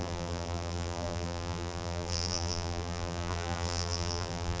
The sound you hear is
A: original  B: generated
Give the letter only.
B